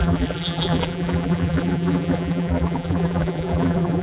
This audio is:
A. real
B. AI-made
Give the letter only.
B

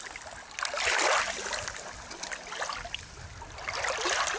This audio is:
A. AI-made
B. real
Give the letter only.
B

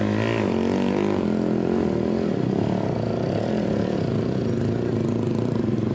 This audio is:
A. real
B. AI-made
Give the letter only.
A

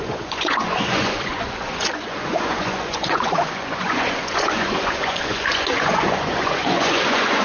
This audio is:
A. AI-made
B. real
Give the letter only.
A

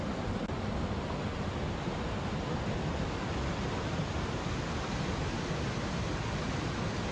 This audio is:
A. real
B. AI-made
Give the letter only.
A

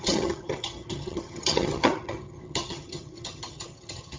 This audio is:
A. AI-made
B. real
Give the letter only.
A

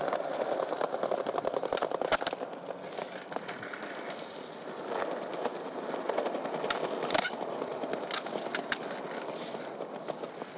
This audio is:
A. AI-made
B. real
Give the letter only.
B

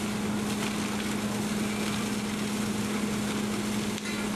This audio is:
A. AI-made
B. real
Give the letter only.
B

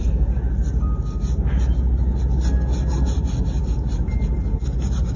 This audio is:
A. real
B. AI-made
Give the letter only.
A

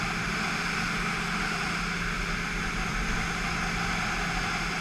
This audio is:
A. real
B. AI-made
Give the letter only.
A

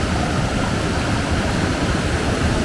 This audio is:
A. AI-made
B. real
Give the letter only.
B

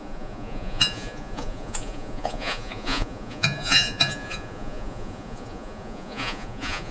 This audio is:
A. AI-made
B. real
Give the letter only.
A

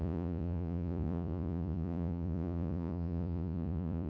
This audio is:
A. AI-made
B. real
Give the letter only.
A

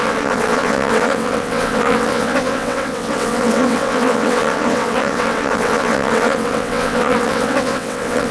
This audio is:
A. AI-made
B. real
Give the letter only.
A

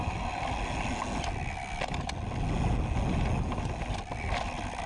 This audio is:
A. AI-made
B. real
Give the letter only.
B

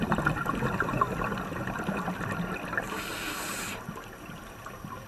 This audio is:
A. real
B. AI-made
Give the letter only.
A